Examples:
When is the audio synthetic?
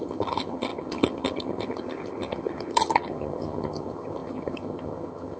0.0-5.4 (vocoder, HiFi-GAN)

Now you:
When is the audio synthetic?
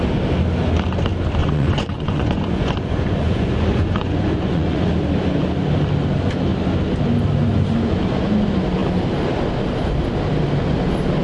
1.4-4.9 (vocoder, Vocos)